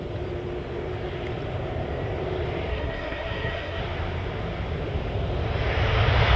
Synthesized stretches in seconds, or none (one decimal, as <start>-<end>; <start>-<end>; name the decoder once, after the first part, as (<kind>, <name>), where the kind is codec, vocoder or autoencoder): 2.7-3.8 (codec, SNAC)